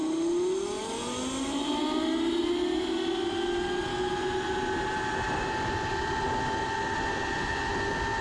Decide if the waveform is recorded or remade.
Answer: recorded